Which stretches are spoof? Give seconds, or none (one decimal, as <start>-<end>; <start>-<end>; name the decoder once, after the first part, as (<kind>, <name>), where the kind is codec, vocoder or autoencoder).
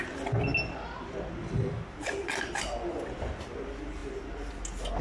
none